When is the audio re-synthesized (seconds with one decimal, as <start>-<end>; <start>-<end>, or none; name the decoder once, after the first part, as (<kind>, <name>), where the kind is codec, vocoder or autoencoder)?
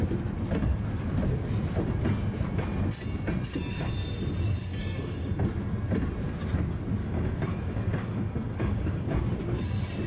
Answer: 4.8-5.3 (codec, DAC); 7.0-9.2